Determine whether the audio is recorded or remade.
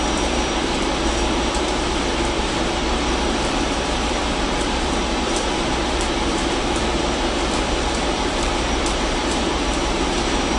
remade